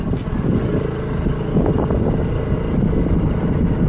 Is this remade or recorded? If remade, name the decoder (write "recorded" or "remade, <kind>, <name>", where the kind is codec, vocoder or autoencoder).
recorded